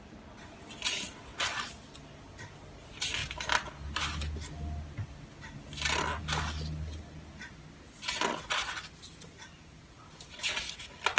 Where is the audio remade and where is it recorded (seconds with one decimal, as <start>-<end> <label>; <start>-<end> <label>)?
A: 0.0-11.2 recorded